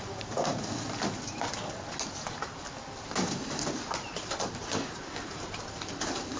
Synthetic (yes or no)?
no